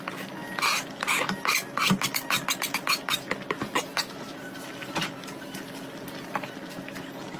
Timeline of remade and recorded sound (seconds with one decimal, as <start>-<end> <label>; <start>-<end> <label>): 0.0-7.4 recorded